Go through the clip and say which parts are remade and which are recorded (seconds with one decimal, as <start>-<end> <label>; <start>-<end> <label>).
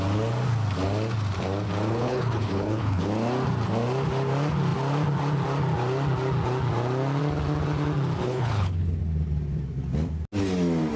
0.0-1.9 recorded; 1.9-3.1 remade; 3.1-8.2 recorded; 8.2-9.0 remade; 9.0-11.0 recorded